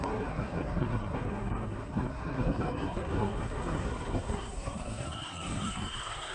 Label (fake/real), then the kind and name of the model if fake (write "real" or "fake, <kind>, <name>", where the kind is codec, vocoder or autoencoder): fake, codec, SNAC